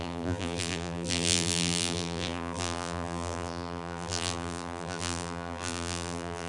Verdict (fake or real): fake